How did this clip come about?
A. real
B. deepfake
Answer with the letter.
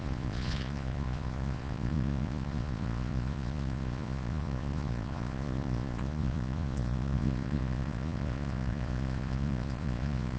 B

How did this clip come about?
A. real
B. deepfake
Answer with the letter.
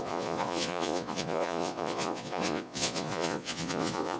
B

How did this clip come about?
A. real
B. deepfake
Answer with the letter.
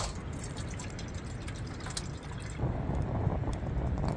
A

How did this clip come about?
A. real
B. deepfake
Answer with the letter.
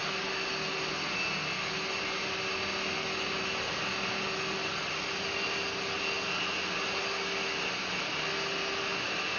A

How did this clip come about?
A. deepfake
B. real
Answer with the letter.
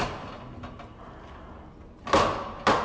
B